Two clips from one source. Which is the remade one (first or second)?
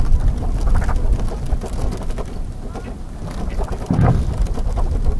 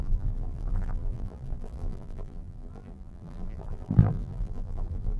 second